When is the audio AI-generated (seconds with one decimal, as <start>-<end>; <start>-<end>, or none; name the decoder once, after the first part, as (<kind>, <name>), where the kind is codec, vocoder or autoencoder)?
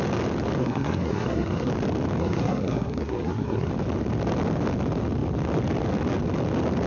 0.6-1.7 (codec, SNAC); 2.2-3.7